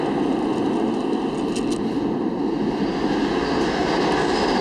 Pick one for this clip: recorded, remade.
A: recorded